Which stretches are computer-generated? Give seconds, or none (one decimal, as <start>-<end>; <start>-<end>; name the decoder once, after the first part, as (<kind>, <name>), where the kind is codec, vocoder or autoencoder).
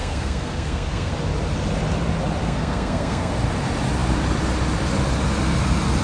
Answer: 0.0-1.1 (codec, SNAC); 2.4-3.3